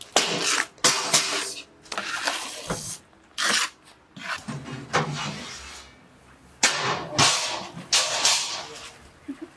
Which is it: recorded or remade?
recorded